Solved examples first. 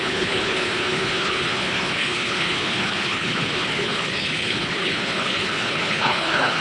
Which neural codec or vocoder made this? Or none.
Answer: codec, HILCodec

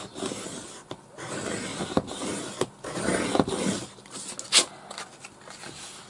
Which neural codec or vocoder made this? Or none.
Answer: none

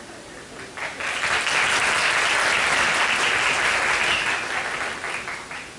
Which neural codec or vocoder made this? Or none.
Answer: none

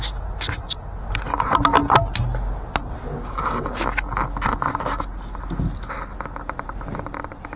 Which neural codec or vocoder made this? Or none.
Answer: none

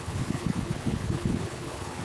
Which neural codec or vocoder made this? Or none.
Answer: codec, HILCodec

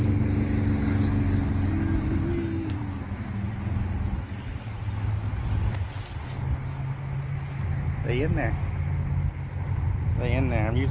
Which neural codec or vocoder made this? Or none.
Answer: none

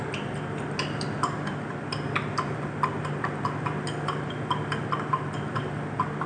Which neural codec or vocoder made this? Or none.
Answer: none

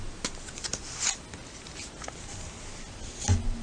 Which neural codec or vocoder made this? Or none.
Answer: none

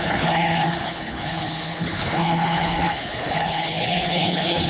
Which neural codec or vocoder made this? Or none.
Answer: codec, HILCodec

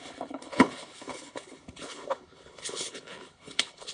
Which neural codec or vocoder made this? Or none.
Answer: codec, HILCodec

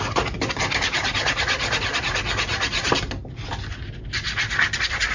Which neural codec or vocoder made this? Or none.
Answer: none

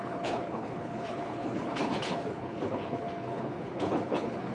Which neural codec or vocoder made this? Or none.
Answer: codec, HILCodec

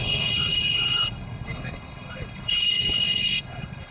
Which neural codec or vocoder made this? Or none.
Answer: codec, HILCodec